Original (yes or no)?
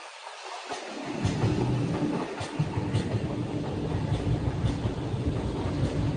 yes